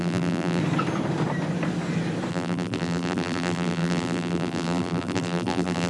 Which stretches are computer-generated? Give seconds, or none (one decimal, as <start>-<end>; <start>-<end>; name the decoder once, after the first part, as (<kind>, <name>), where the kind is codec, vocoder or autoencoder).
0.0-0.6 (vocoder, BigVGAN v2); 2.3-5.9